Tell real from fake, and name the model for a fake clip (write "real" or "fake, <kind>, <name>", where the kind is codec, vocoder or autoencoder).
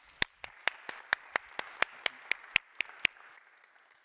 real